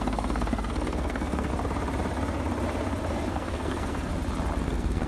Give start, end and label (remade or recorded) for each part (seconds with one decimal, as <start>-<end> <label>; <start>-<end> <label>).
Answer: 0.0-1.5 remade; 1.5-3.3 recorded; 3.3-4.1 remade; 4.1-4.6 recorded; 4.6-5.1 remade